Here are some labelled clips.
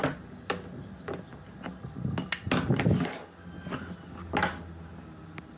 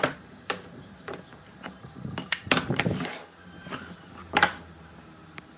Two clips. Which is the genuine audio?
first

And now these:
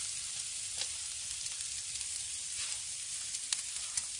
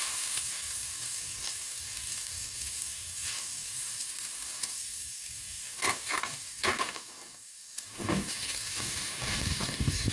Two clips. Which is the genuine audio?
first